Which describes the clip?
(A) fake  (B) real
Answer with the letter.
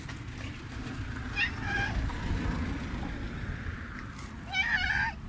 B